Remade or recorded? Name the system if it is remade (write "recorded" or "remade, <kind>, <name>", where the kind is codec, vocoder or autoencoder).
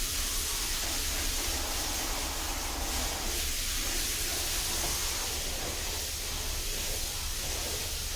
recorded